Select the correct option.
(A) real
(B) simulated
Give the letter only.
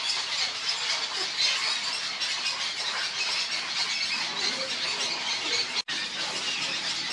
A